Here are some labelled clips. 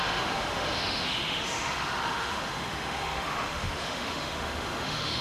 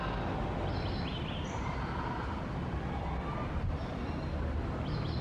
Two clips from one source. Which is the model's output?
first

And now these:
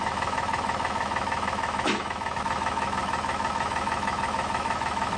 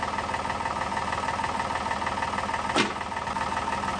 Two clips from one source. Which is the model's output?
first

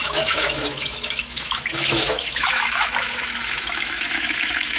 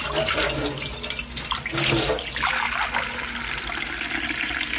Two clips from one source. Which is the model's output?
first